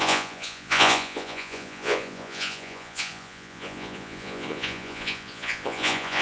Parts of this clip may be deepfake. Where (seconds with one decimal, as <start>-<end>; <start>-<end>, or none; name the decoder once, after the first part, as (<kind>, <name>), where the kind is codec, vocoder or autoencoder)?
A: 0.0-6.2 (vocoder, Vocos)